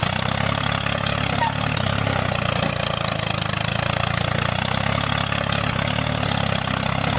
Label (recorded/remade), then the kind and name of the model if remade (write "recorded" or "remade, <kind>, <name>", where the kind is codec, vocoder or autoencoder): recorded